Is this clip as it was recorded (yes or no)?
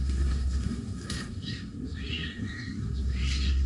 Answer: no